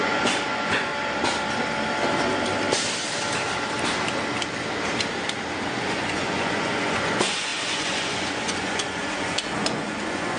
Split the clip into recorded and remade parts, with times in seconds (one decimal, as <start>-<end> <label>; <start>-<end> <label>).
0.0-0.9 remade; 0.9-5.7 recorded; 5.7-10.4 remade